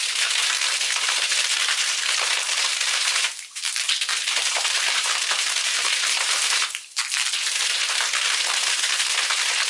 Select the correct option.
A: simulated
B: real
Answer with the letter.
A